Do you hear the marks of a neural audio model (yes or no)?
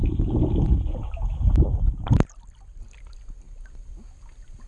no